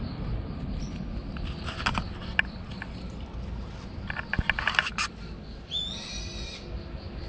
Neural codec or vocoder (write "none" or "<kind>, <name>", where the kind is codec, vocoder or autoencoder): none